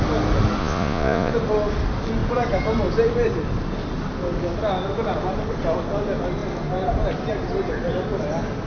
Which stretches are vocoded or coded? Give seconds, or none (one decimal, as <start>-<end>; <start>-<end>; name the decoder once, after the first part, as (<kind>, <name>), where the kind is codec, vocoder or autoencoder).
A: 0.6-1.3 (vocoder, Vocos)